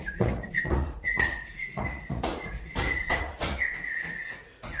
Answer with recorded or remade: remade